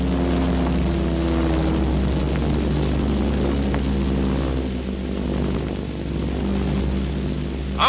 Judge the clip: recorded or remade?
recorded